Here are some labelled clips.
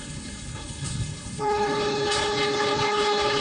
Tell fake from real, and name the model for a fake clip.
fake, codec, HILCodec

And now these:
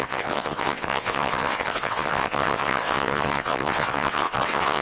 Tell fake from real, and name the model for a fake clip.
fake, vocoder, WaveNeXt